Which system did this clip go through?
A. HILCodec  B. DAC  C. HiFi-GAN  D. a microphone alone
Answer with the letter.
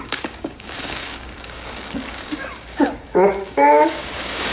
B